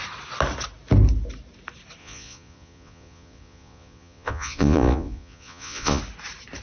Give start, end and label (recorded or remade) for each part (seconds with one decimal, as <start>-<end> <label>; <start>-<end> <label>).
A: 0.0-2.0 recorded; 2.0-6.0 remade; 6.0-6.6 recorded